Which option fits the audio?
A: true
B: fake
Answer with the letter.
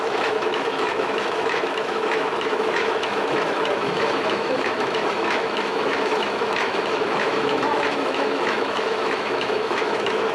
B